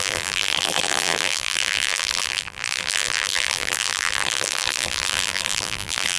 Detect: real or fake fake